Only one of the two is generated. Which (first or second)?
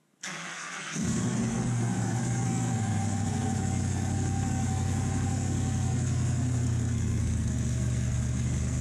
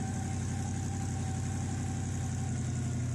first